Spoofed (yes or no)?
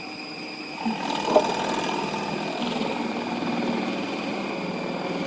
no